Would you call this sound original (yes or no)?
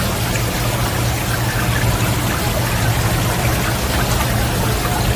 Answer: yes